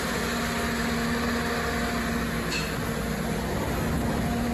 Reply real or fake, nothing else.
real